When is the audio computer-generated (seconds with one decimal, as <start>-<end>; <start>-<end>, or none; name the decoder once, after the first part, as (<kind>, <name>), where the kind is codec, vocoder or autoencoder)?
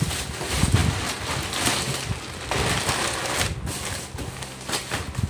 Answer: none